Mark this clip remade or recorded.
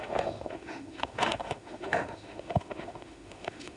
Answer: remade